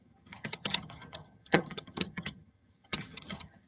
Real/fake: fake